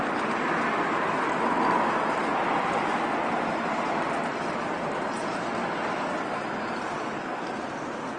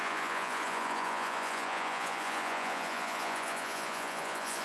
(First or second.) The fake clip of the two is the second